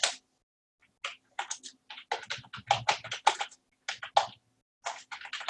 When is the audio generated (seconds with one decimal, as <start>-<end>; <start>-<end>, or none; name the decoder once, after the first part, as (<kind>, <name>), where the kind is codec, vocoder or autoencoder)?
none